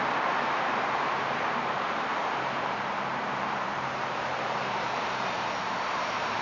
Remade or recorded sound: remade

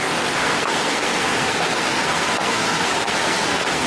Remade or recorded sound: remade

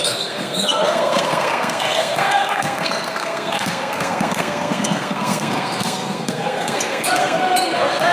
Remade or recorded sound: remade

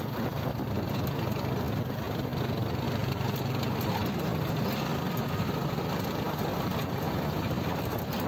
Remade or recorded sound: recorded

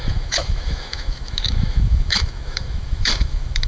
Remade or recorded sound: remade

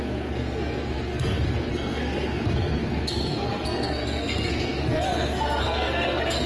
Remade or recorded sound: remade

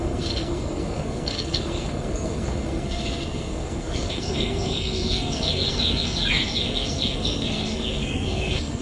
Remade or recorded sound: remade